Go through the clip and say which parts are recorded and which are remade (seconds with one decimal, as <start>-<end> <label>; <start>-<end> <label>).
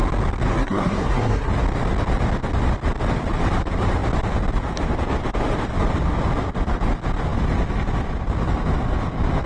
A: 0.0-0.5 recorded; 0.5-1.5 remade; 1.5-9.5 recorded